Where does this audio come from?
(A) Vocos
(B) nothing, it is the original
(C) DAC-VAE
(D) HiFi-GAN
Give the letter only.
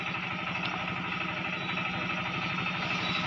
B